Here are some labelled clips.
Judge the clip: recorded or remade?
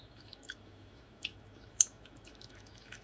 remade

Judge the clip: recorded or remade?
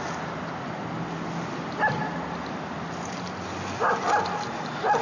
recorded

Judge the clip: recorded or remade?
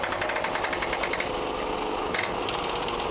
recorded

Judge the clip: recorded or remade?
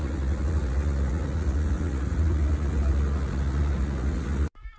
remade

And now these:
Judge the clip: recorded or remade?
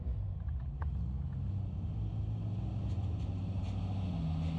recorded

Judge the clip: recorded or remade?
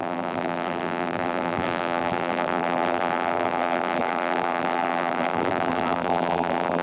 remade